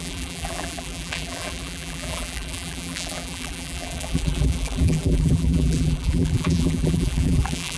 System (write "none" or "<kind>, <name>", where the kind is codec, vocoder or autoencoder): vocoder, BigVGAN v2